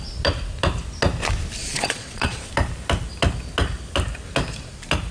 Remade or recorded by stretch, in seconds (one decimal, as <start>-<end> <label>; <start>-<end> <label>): 0.0-1.6 recorded; 1.6-2.5 remade; 2.5-5.1 recorded

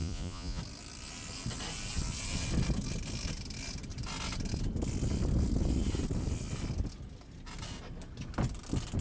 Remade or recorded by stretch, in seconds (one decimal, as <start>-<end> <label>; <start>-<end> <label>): 0.0-0.6 remade; 0.6-9.0 recorded

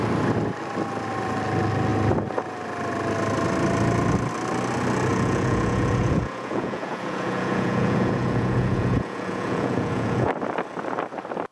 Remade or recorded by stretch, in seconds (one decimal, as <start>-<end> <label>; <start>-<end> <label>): 0.0-5.1 recorded; 5.1-10.3 remade; 10.3-11.5 recorded

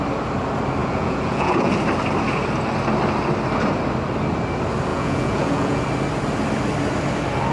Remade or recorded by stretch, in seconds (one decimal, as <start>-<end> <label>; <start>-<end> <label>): 0.0-0.8 recorded; 0.8-1.7 remade; 1.7-4.9 recorded; 4.9-5.8 remade; 5.8-7.5 recorded

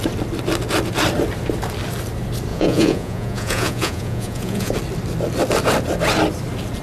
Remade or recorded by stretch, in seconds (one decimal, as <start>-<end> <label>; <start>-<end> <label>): 0.0-2.5 recorded; 2.5-4.7 remade; 4.7-6.8 recorded